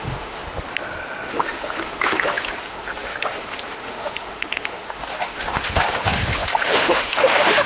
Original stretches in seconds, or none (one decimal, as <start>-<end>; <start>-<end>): 0.4-1.3